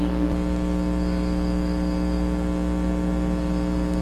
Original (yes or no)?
yes